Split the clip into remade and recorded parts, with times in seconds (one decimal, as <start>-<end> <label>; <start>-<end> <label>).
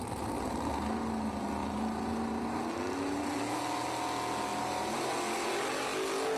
0.0-1.6 recorded; 1.6-2.6 remade; 2.6-4.5 recorded; 4.5-5.2 remade; 5.2-6.4 recorded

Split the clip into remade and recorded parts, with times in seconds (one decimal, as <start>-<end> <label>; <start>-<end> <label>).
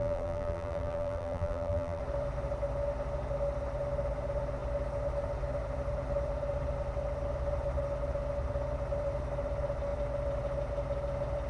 0.0-2.0 remade; 2.0-11.5 recorded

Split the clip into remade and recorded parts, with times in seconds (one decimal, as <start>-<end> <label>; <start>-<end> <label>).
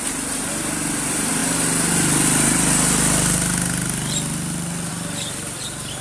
0.0-1.4 remade; 1.4-4.9 recorded; 4.9-6.0 remade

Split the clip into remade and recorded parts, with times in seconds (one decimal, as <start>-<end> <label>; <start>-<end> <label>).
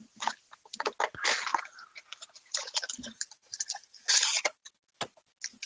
0.0-1.5 recorded; 1.5-4.9 remade; 4.9-5.7 recorded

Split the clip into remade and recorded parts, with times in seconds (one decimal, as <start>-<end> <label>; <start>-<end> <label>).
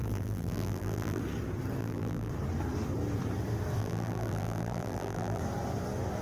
0.0-1.2 remade; 1.2-1.8 recorded; 1.8-2.3 remade; 2.3-3.8 recorded; 3.8-5.4 remade; 5.4-6.2 recorded